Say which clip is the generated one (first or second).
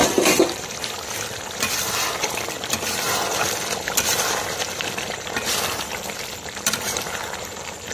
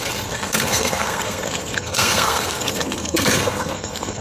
second